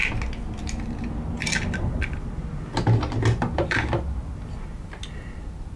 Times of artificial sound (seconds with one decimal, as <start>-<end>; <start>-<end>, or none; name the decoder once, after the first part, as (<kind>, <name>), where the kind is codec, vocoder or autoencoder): none